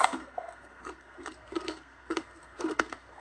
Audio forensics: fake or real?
fake